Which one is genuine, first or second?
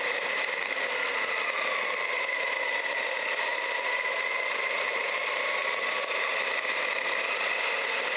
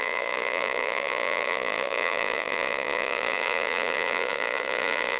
first